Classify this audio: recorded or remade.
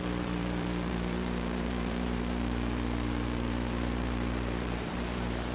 remade